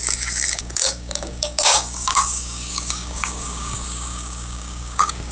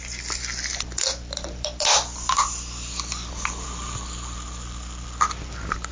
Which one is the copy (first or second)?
first